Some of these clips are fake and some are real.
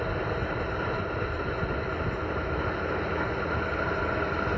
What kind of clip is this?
real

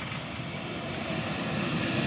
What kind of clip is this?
real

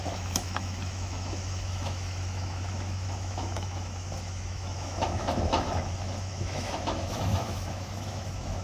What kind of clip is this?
fake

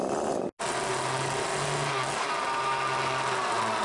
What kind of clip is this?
real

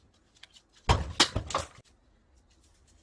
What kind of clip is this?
real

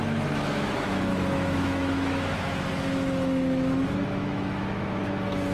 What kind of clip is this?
fake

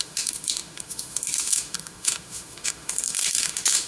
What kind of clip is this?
fake